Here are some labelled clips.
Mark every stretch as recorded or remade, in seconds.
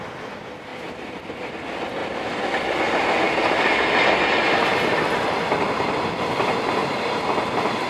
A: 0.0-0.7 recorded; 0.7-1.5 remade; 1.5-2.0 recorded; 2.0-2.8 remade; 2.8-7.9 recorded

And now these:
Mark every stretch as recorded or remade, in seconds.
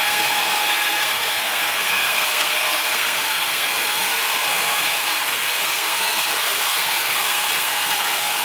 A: 0.0-8.4 remade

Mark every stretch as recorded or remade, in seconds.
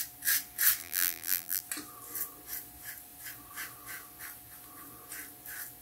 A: 0.0-0.8 recorded; 0.8-1.6 remade; 1.6-5.8 recorded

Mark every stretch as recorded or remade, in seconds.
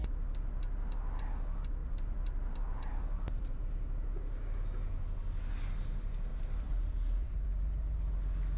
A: 0.0-1.8 recorded; 1.8-3.6 remade; 3.6-6.3 recorded; 6.3-8.1 remade; 8.1-8.6 recorded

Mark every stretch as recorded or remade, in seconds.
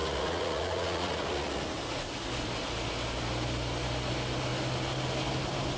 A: 0.0-1.6 remade; 1.6-5.8 recorded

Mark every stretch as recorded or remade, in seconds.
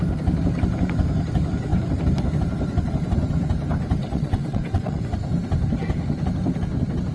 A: 0.0-4.0 recorded; 4.0-5.0 remade; 5.0-7.1 recorded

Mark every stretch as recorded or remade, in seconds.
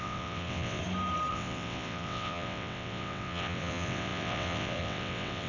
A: 0.0-0.8 remade; 0.8-1.3 recorded; 1.3-5.5 remade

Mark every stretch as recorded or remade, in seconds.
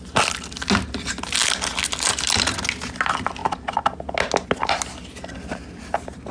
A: 0.0-6.3 recorded